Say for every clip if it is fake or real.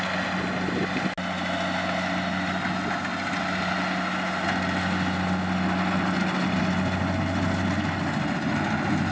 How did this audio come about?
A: real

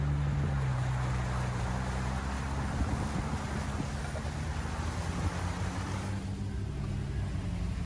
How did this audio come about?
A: real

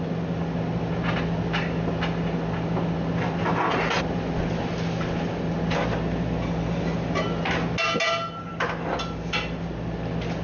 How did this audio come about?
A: real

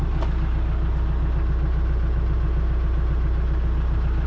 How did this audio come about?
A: real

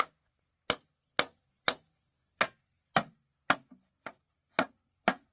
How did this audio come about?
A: real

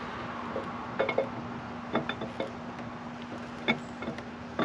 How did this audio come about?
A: real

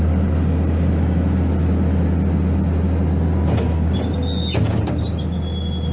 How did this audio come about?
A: real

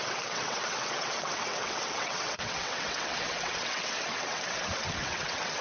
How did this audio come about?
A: fake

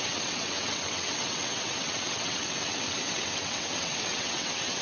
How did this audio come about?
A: fake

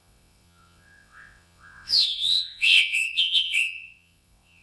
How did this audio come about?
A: fake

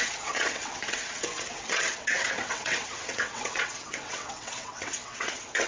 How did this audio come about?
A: fake